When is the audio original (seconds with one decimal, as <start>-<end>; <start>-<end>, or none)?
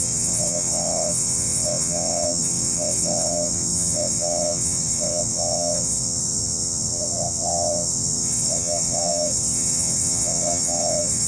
none